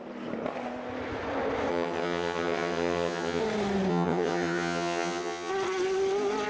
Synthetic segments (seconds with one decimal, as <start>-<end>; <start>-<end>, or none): 1.7-3.4; 3.9-5.5